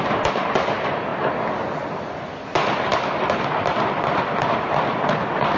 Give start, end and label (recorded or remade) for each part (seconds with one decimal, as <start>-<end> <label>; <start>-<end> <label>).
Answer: 0.0-5.6 recorded